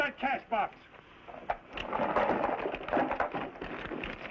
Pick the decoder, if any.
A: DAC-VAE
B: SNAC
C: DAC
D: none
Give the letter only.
D